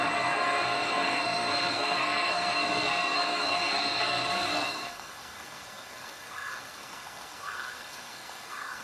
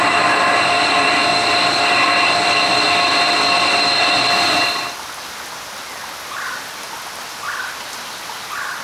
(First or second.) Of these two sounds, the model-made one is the first